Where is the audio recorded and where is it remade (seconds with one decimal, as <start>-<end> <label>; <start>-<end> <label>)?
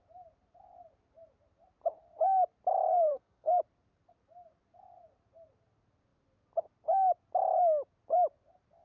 0.0-2.9 recorded; 2.9-3.6 remade; 3.6-8.8 recorded